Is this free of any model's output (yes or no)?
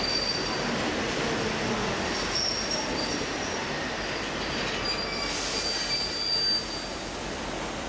yes